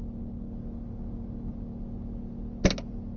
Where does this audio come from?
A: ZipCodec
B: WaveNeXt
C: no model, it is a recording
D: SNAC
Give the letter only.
C